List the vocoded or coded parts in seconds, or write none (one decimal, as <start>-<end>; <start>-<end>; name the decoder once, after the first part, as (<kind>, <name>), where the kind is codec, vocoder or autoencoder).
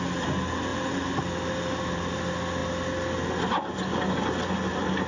none